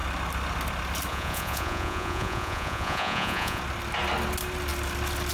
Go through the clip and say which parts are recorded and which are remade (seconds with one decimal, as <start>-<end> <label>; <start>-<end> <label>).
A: 0.0-1.1 recorded; 1.1-3.6 remade; 3.6-5.3 recorded